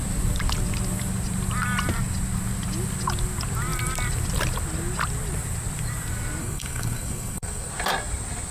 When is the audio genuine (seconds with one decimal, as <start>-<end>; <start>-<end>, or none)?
0.0-6.4; 7.7-8.5